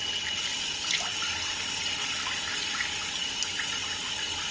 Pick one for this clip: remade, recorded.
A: recorded